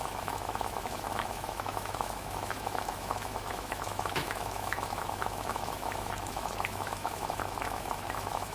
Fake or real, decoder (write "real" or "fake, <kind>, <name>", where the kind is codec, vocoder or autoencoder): fake, autoencoder, DAC-VAE